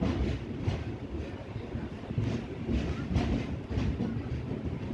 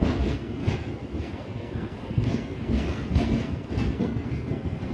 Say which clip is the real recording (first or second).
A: first